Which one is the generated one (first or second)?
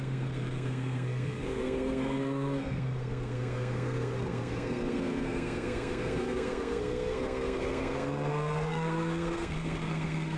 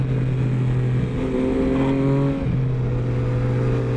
first